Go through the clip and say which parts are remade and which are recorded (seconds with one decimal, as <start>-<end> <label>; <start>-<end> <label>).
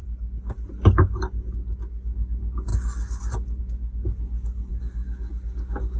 0.0-6.0 recorded